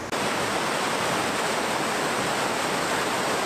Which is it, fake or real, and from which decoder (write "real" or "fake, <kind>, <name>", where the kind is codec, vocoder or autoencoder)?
real